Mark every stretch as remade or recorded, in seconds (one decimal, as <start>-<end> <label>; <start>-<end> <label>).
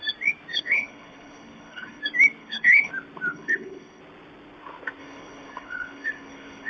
0.0-0.5 recorded; 0.5-2.0 remade; 2.0-2.4 recorded; 2.4-2.9 remade; 2.9-3.3 recorded; 3.3-4.0 remade; 4.0-5.0 recorded; 5.0-6.7 remade